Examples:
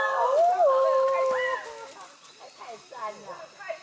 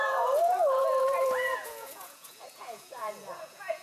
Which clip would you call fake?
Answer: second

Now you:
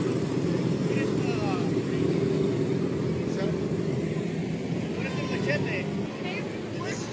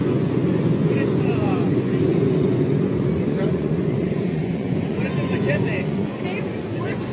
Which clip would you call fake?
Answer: second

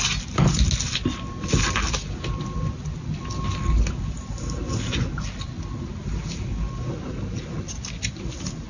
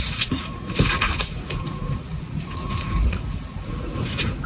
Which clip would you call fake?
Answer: second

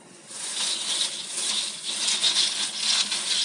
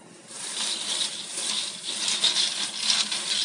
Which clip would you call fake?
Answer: first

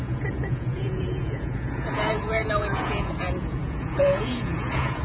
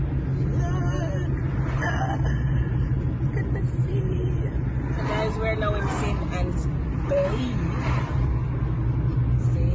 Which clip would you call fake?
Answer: first